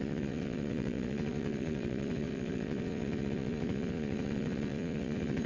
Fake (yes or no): yes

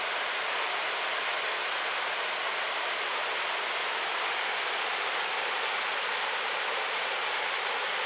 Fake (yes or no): no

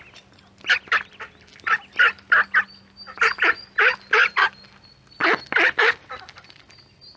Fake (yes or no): no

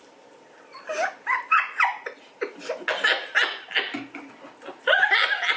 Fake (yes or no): no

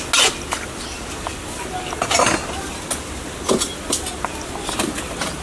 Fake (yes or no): no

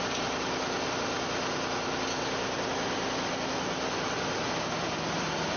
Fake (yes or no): no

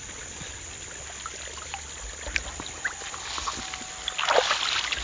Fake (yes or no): no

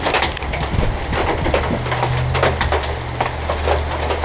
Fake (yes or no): no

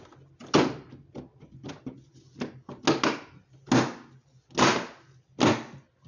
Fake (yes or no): no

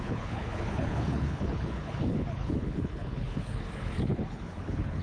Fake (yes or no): yes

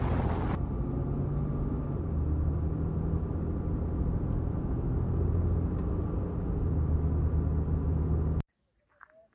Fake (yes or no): no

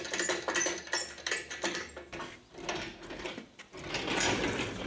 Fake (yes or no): no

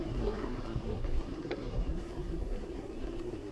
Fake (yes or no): yes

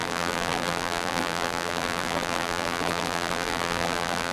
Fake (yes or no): yes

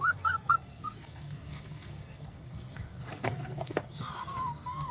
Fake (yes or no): yes